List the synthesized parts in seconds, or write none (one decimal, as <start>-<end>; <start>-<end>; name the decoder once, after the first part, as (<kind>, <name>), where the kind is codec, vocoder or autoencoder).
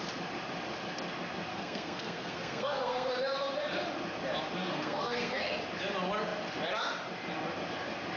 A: 1.5-3.1 (codec, SNAC); 4.6-5.6